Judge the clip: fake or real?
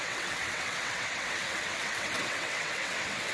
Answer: fake